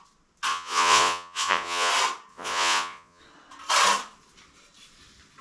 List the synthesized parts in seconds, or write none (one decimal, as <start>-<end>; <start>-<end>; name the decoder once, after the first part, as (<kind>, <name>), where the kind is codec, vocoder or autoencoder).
0.5-1.9 (vocoder, Vocos); 2.3-3.2